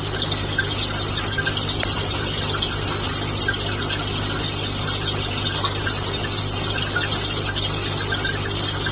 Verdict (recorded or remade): recorded